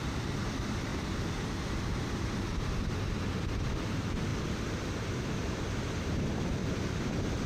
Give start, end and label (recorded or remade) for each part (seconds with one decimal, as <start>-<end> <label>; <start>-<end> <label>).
0.0-6.6 recorded; 6.6-7.5 remade